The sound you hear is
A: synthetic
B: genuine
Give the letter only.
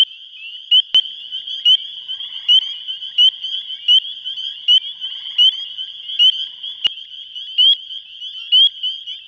B